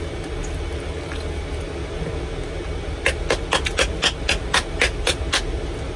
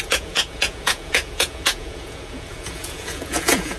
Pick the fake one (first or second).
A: second